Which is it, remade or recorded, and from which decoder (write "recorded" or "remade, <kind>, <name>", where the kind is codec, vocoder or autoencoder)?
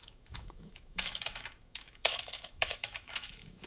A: remade, autoencoder, DAC-VAE